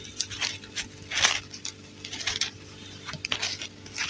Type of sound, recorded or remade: recorded